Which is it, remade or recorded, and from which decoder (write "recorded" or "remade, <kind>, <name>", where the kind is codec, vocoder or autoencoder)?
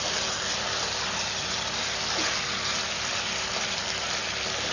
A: recorded